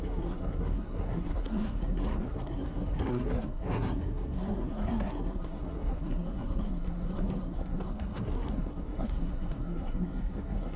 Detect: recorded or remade remade